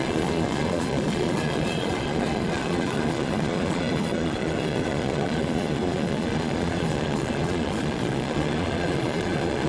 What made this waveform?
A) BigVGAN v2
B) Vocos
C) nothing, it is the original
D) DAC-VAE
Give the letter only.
B